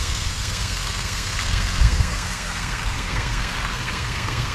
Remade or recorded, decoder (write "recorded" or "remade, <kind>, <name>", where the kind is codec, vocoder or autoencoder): remade, codec, SNAC